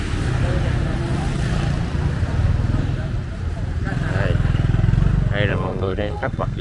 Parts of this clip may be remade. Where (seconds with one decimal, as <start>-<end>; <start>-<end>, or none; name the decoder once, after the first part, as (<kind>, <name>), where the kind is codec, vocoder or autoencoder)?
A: 5.5-6.6 (codec, SNAC)